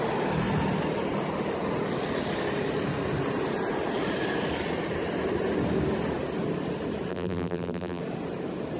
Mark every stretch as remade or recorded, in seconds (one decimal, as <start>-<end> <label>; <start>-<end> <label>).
0.0-7.1 recorded; 7.1-8.0 remade; 8.0-8.8 recorded